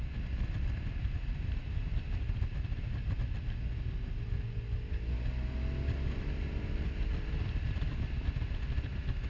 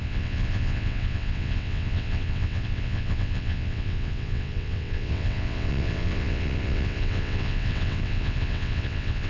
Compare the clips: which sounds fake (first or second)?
second